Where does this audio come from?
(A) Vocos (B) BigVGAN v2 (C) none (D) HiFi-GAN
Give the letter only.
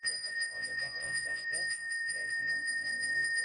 A